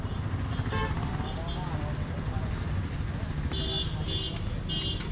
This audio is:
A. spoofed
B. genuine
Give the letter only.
B